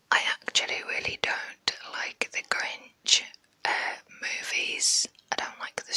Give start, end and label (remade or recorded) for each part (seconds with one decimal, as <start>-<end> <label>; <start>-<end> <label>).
0.0-1.1 remade; 1.1-6.0 recorded